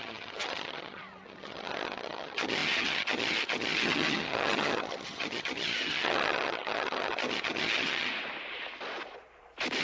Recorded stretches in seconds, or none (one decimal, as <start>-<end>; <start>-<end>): 8.1-9.8